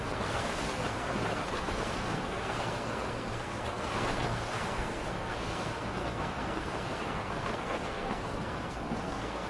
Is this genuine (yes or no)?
no